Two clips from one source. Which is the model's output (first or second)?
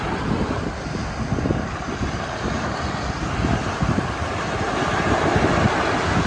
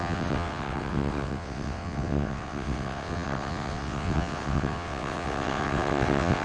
second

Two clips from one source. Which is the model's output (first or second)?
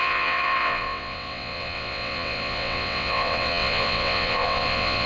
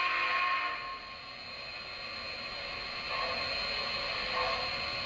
first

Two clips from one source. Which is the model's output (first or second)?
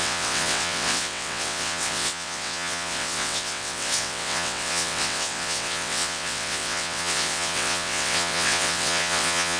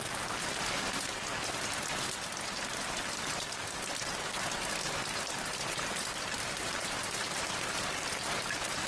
first